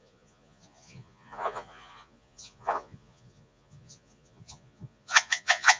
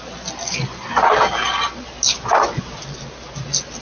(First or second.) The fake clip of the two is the first